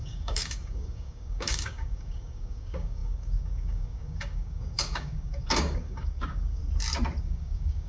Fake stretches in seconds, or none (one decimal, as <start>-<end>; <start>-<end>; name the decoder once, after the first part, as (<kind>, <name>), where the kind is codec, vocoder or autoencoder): 0.0-6.6 (codec, DAC); 7.2-7.9

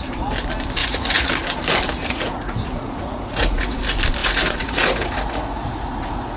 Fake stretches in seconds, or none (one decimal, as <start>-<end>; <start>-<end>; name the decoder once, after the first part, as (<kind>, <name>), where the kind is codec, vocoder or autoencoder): 0.8-1.3 (vocoder, Vocos); 2.0-3.8; 4.2-6.4

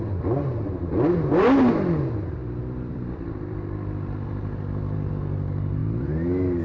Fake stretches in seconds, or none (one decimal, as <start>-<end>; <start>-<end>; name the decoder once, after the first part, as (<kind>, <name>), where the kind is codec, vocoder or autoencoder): 2.4-5.1 (vocoder, BigVGAN v2)

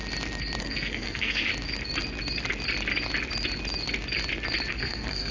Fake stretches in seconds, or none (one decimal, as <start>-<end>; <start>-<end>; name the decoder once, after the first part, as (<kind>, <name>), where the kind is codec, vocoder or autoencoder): 0.6-1.5 (codec, SNAC); 4.7-5.3

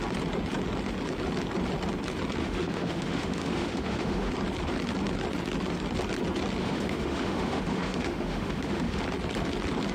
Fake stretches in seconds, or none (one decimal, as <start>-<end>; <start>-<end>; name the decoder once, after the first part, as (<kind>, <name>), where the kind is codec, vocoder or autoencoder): 2.4-4.3 (autoencoder, DAC-VAE); 6.6-9.0

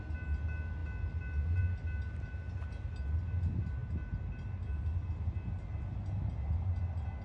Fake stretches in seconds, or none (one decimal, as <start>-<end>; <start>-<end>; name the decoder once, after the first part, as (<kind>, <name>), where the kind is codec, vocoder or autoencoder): none

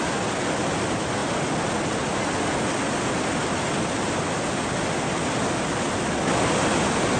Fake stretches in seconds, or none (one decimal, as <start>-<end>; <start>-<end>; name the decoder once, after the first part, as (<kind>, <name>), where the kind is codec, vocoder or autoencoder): none

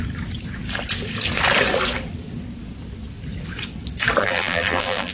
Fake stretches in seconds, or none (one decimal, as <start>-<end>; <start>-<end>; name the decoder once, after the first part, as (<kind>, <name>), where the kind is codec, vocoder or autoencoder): 4.2-5.1 (vocoder, BigVGAN v2)